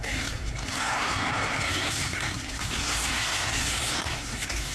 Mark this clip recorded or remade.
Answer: remade